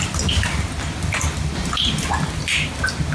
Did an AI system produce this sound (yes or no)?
no